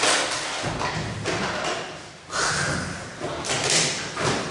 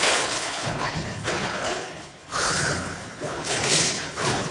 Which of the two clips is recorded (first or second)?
first